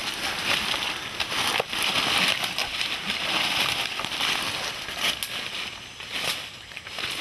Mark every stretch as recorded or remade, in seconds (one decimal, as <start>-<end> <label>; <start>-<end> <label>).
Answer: 0.0-7.2 recorded